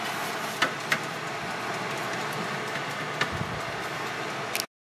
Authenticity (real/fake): real